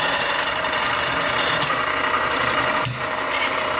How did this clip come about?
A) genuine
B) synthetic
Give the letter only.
B